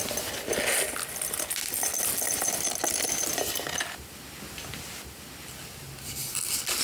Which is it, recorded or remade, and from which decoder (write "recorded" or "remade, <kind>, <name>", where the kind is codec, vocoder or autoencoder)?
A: recorded